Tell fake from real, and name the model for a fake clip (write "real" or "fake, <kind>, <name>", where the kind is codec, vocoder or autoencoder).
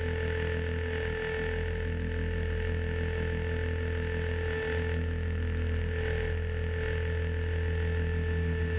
real